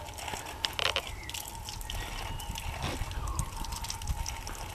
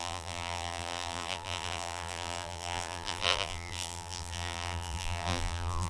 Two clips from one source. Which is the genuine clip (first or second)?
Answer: first